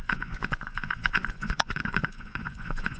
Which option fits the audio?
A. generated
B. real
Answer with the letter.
A